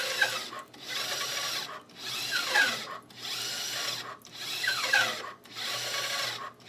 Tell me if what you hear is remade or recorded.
recorded